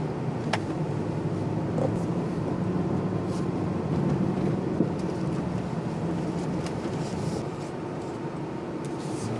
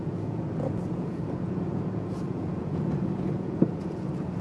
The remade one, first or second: second